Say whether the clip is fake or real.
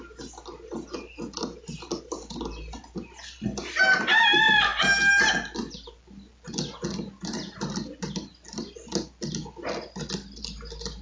real